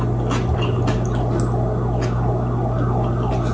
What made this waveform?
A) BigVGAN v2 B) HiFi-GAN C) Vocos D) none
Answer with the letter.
D